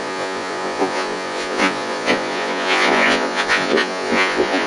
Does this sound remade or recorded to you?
remade